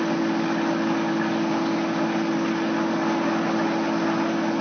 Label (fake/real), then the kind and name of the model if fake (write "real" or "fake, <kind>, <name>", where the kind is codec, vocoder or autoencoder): real